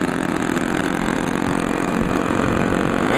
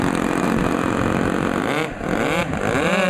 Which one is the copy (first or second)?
first